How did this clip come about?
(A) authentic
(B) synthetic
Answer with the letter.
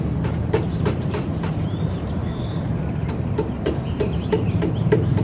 B